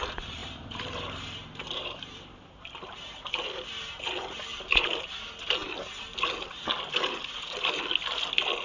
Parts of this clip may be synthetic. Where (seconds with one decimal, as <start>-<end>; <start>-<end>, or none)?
0.4-4.1; 4.5-5.1